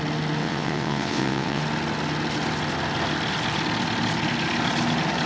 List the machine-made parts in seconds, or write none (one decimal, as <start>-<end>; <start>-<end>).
0.4-1.6